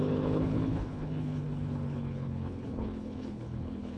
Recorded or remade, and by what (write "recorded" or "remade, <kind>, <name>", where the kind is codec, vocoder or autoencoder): remade, codec, HILCodec